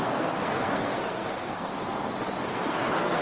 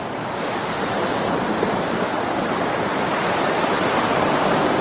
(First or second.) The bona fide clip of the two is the second